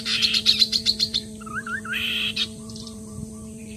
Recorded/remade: remade